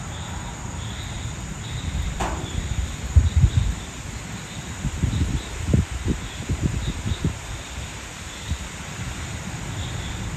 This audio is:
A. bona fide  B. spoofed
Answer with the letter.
B